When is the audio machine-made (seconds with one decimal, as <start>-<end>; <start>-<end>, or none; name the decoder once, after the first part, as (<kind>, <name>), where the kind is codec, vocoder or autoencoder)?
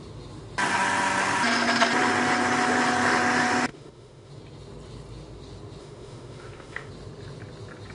3.7-4.3 (autoencoder, DAC-VAE); 5.8-6.9